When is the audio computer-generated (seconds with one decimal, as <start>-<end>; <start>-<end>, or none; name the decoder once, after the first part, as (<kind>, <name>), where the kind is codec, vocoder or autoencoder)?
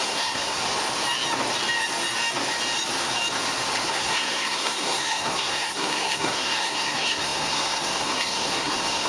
0.0-0.6 (codec, SNAC); 3.9-9.1